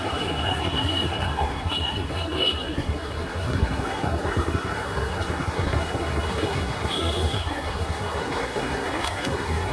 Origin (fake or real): fake